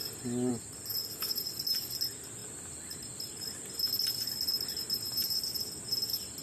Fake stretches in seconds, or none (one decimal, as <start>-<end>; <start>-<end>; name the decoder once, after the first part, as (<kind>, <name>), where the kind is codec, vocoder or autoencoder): none